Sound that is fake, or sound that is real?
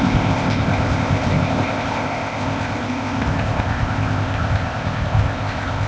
fake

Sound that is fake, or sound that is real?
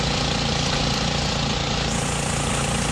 real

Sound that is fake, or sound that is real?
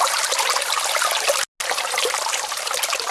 real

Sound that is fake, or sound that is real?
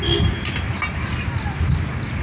real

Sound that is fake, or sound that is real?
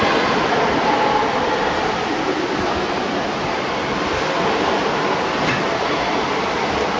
real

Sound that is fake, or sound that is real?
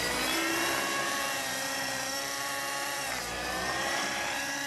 fake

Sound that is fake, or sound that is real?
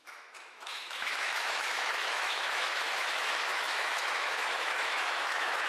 fake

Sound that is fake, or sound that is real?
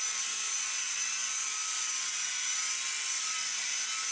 real